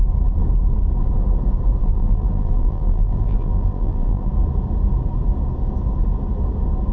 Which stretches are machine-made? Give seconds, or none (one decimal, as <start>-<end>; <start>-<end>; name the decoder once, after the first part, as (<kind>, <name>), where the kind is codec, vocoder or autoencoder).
1.8-4.3 (vocoder, BigVGAN v2)